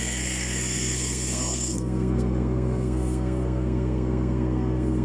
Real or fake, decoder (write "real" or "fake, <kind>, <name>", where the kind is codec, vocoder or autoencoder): fake, codec, SNAC